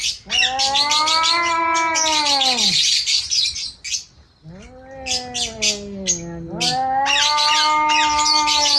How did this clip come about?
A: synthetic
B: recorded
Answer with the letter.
B